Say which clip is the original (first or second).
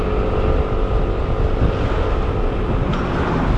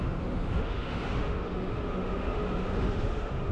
first